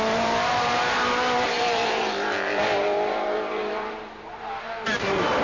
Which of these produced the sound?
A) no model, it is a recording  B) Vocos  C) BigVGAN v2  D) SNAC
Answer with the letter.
C